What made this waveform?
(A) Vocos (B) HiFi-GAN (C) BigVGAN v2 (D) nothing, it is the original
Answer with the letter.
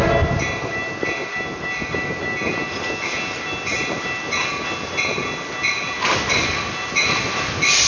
D